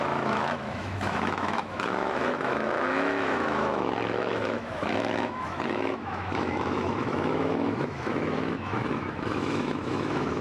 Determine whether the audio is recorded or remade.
remade